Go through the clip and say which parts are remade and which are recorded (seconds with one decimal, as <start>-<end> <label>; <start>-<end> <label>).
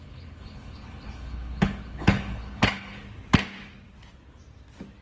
0.0-3.0 remade; 3.0-5.0 recorded